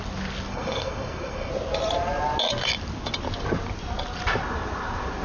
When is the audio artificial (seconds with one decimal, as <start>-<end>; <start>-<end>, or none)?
0.5-1.5